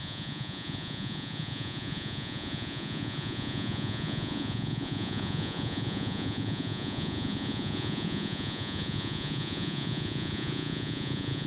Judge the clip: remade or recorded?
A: remade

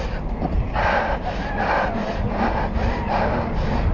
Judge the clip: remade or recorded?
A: recorded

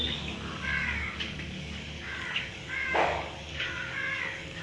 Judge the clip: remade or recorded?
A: remade